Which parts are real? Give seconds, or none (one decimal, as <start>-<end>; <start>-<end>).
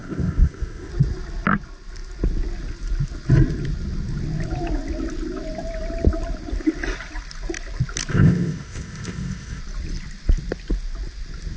0.9-8.1; 9.6-11.6